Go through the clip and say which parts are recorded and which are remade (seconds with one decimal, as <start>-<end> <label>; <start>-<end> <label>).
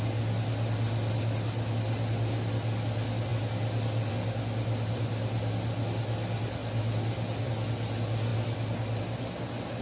0.0-9.8 recorded